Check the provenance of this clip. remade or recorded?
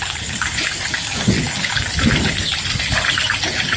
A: recorded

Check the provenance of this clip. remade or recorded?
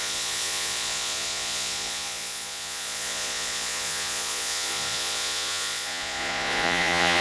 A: remade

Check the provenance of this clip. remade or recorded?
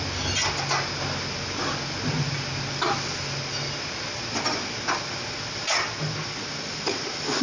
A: recorded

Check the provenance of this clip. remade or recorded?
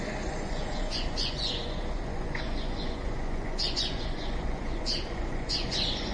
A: remade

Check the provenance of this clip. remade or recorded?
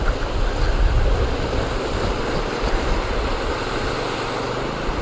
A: recorded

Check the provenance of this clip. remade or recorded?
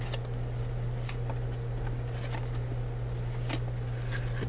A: recorded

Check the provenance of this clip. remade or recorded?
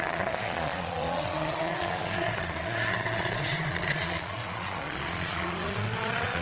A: remade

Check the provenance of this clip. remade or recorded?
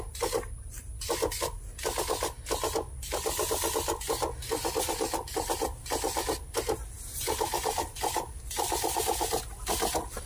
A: recorded